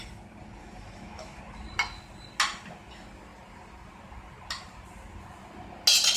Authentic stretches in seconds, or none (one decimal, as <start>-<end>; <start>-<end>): 0.0-0.6; 1.4-6.2